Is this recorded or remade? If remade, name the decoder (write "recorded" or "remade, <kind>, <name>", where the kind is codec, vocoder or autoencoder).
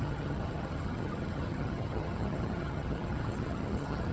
remade, vocoder, HiFi-GAN